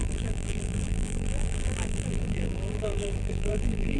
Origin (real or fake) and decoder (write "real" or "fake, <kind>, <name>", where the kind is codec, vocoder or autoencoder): fake, vocoder, BigVGAN v2